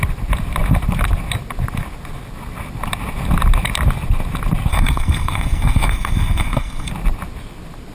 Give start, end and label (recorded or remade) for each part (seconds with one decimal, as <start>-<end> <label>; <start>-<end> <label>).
0.0-4.7 recorded; 4.7-6.9 remade; 6.9-7.9 recorded